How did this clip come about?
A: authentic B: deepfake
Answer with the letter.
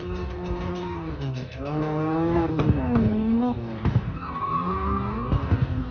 B